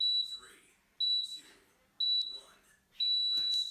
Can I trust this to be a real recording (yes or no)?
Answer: yes